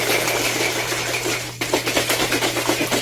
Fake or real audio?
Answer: real